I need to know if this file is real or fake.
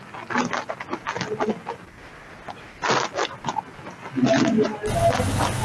real